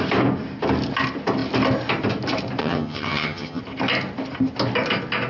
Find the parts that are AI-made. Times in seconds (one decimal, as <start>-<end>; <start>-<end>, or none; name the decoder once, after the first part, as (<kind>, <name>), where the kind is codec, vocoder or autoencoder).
2.6-3.6 (vocoder, HiFi-GAN)